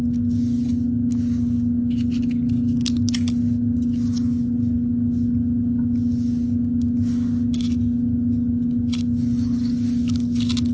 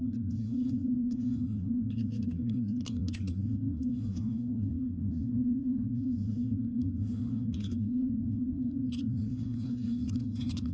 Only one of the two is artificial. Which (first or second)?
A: second